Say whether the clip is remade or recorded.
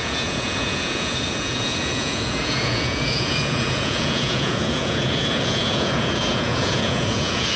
remade